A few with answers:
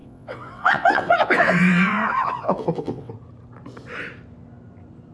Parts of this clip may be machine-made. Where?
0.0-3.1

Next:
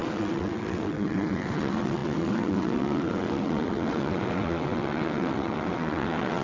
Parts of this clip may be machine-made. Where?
0.0-6.4

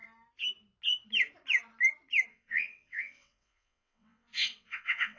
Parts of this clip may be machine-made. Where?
2.3-5.2